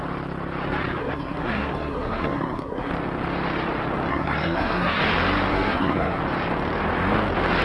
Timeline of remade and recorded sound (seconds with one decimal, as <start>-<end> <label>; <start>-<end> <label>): 0.0-1.0 recorded; 1.0-2.9 remade; 2.9-4.1 recorded; 4.1-5.0 remade; 5.0-5.5 recorded; 5.5-6.2 remade; 6.2-7.6 recorded